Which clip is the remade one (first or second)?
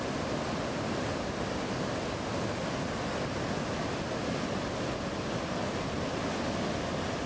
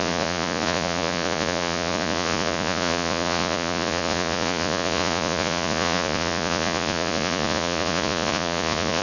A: second